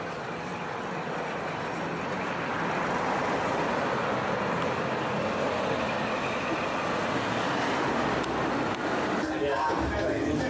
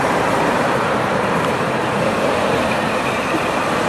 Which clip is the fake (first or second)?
second